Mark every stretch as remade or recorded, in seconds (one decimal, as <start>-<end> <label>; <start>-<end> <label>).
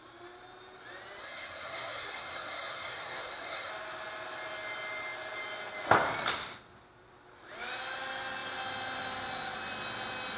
0.0-1.2 recorded; 1.2-3.7 remade; 3.7-10.4 recorded